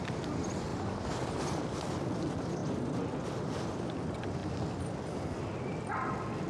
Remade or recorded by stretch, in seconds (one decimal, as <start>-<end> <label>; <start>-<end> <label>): 0.0-6.5 recorded